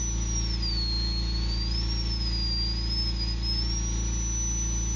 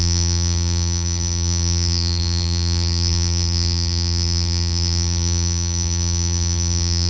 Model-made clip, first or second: second